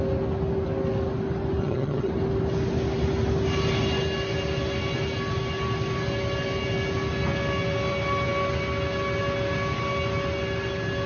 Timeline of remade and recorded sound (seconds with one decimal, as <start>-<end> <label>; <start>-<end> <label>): 0.0-1.6 recorded; 1.6-2.1 remade; 2.1-11.1 recorded